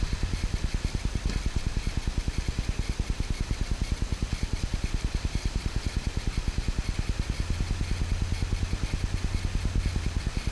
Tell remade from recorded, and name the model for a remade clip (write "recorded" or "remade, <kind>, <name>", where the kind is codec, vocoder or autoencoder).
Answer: recorded